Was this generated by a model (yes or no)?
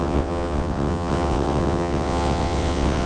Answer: yes